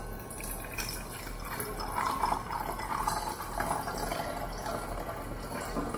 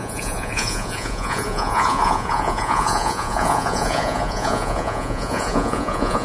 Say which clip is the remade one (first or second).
second